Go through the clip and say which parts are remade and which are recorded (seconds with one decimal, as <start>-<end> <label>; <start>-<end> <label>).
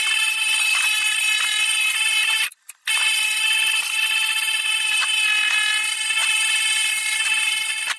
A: 0.0-8.0 recorded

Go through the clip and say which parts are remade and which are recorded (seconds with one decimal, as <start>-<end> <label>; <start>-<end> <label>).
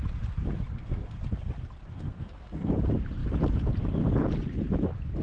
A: 0.0-0.7 recorded; 0.7-1.2 remade; 1.2-1.9 recorded; 1.9-2.7 remade; 2.7-5.2 recorded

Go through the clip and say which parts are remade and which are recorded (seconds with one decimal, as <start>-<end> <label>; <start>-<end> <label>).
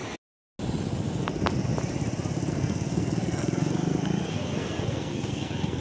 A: 0.0-2.5 recorded; 2.5-5.8 remade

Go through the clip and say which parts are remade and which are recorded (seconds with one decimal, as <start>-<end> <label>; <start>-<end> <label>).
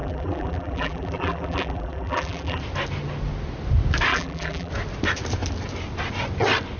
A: 0.0-2.6 remade; 2.6-4.1 recorded; 4.1-4.7 remade; 4.7-6.8 recorded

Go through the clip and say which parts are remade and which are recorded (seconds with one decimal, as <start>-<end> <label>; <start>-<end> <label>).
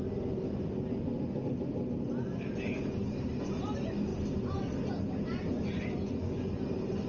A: 0.0-6.0 recorded; 6.0-6.5 remade; 6.5-7.1 recorded